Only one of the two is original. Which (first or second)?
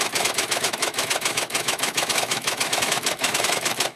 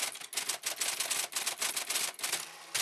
second